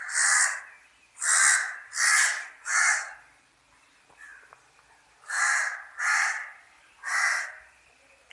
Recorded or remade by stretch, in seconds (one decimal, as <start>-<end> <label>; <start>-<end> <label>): 0.0-8.3 recorded